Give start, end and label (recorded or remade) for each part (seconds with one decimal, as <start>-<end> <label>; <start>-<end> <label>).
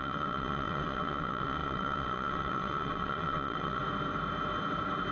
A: 0.0-3.8 remade; 3.8-5.1 recorded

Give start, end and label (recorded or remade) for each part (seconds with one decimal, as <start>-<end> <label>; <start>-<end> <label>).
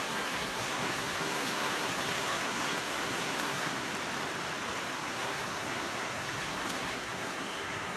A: 0.0-3.9 remade; 3.9-4.9 recorded; 4.9-8.0 remade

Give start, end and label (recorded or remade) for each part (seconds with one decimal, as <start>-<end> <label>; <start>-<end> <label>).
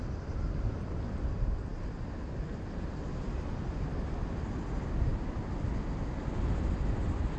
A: 0.0-7.4 recorded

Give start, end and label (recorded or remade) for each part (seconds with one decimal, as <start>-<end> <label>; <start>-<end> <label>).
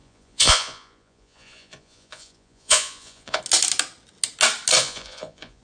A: 0.0-3.4 remade; 3.4-4.8 recorded; 4.8-5.6 remade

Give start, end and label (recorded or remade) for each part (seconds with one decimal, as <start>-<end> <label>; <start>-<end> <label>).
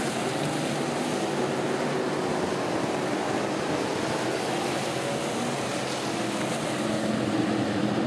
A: 0.0-8.1 recorded